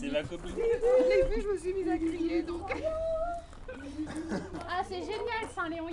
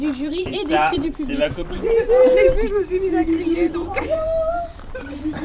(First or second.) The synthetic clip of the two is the second